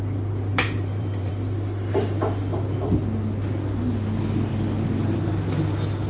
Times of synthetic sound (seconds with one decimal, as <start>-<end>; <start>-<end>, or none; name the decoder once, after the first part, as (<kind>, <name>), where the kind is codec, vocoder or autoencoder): 0.5-1.3 (vocoder, BigVGAN v2)